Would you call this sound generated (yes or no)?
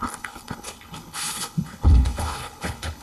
yes